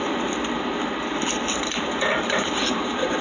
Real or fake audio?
real